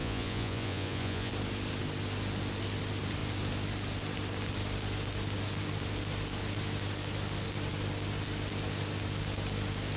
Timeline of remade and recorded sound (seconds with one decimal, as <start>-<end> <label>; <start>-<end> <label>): 0.0-1.3 remade; 1.3-10.0 recorded